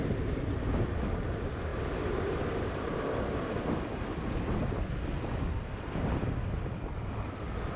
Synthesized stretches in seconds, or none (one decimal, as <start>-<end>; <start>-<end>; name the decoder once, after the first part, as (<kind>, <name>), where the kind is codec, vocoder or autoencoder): none